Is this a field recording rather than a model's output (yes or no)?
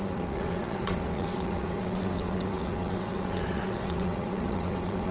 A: no